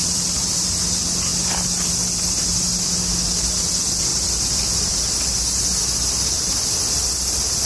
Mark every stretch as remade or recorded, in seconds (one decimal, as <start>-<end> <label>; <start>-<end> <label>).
0.0-0.6 remade; 0.6-4.1 recorded; 4.1-5.1 remade; 5.1-7.7 recorded